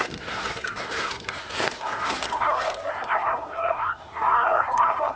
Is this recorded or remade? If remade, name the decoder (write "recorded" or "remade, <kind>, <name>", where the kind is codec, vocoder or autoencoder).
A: remade, codec, SNAC